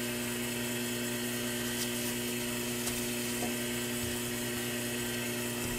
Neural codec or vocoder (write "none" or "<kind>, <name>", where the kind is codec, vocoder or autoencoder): none